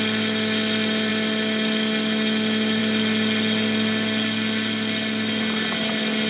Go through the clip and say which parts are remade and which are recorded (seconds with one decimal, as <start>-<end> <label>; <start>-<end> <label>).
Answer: 0.0-6.3 recorded